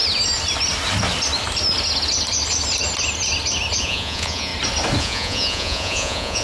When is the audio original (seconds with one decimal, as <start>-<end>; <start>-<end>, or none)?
0.0-3.8; 4.5-5.0